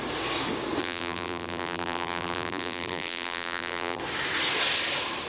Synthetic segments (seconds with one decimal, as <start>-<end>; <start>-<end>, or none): 0.8-4.0